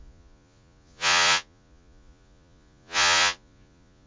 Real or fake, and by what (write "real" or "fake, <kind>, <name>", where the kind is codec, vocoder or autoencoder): fake, vocoder, Vocos